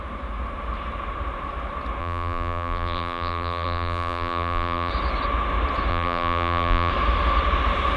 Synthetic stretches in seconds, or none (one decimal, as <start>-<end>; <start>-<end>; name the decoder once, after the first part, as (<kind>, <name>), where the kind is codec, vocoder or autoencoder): 2.0-4.9 (vocoder, BigVGAN v2); 5.9-6.9